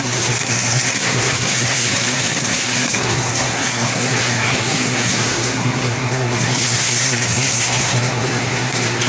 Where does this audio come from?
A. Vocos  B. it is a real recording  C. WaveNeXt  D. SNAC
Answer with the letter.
D